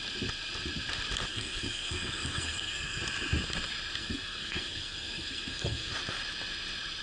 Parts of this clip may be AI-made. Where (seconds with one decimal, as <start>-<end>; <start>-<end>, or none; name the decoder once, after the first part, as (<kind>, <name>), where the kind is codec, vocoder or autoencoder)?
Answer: 1.3-3.0 (codec, SNAC); 4.0-5.9